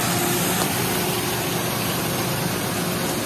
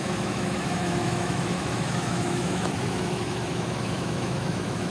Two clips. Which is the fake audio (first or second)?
second